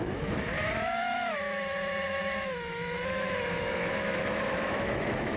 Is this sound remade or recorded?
remade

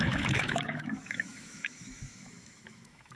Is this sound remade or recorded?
remade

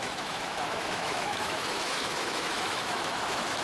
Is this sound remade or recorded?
remade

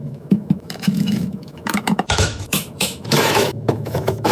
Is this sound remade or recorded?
remade